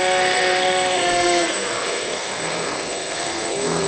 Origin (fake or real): fake